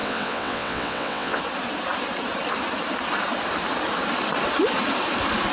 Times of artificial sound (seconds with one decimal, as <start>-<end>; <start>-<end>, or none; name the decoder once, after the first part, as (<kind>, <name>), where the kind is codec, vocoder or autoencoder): 0.0-1.4 (vocoder, WaveNeXt)